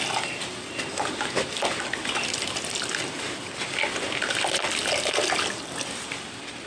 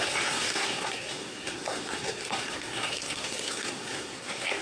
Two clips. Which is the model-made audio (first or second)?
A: second